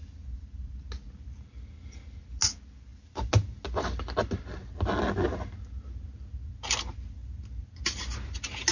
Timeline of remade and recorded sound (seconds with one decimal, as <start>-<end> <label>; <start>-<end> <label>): 0.0-8.7 recorded